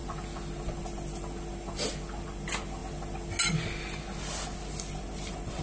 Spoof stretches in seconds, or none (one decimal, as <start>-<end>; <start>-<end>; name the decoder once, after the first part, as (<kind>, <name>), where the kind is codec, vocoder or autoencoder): none